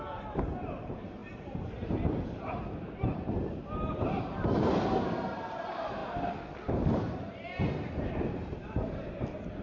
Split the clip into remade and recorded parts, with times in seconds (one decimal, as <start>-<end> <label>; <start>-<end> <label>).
0.0-6.0 remade; 6.0-8.1 recorded; 8.1-9.6 remade